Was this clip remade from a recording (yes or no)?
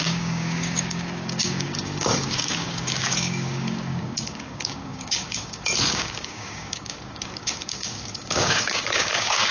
yes